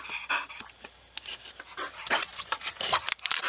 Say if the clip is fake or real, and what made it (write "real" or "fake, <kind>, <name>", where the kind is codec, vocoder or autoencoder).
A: real